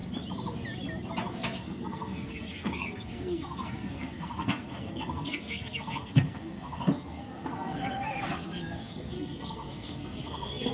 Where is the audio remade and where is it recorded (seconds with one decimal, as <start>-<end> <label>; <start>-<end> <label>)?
0.0-1.3 recorded; 1.3-10.7 remade